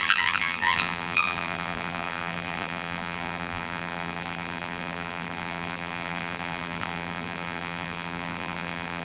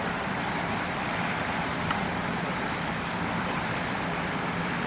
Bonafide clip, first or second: second